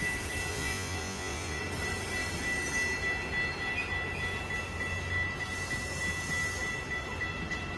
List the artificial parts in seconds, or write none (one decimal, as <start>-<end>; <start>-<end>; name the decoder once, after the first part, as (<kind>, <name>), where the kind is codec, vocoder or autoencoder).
0.5-1.6 (vocoder, Vocos)